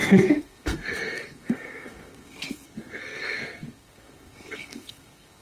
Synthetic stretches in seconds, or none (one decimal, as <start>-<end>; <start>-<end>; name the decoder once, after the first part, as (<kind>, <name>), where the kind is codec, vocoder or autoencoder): 0.0-5.4 (codec, SNAC)